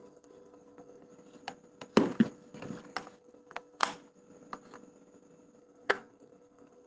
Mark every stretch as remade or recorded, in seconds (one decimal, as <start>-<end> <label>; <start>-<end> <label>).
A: 0.0-1.1 remade; 1.1-3.2 recorded; 3.2-3.8 remade; 3.8-5.6 recorded; 5.6-6.9 remade